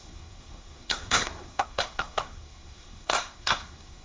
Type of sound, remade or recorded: remade